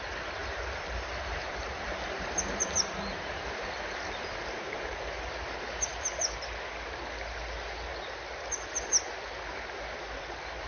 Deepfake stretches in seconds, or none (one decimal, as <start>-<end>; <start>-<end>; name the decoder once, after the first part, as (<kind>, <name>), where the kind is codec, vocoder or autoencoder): 0.4-5.3 (vocoder, BigVGAN v2)